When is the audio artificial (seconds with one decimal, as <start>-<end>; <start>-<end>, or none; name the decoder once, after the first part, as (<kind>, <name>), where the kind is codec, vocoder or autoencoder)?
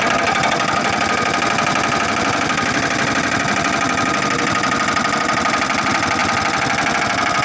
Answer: none